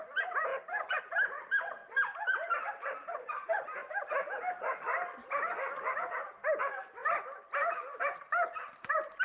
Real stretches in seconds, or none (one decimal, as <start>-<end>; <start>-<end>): 1.8-3.1; 3.8-6.0